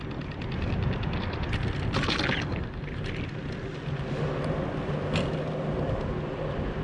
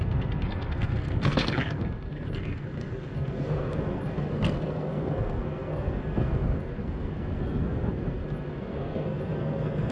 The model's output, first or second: second